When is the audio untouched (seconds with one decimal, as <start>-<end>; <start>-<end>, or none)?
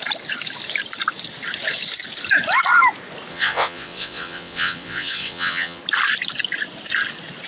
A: 0.0-3.3; 5.8-7.5